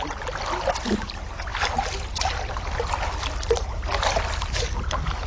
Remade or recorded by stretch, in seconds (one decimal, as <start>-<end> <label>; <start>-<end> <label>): 0.0-5.3 recorded